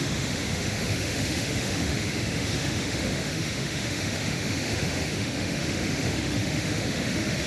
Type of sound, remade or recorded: remade